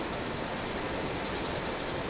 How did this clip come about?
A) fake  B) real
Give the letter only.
B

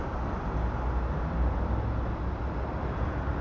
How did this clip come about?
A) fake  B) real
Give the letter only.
B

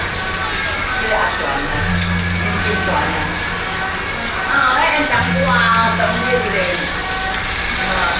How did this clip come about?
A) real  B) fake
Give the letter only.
A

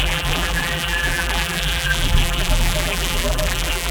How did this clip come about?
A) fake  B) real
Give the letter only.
A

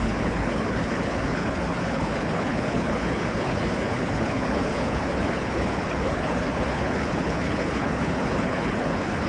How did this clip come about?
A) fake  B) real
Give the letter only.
A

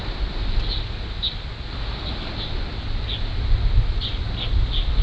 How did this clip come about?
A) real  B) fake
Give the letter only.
A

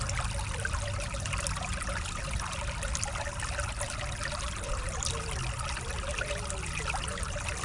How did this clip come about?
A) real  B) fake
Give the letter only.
A